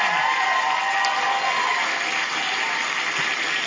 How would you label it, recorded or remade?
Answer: remade